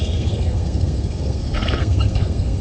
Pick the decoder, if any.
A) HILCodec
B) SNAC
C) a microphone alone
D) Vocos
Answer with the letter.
B